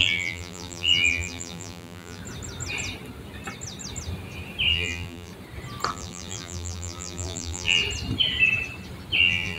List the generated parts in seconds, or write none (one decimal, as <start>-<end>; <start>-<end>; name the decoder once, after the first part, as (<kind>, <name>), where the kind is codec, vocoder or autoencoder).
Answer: 0.0-2.2 (vocoder, BigVGAN v2); 4.7-5.3; 5.9-7.8; 9.2-9.6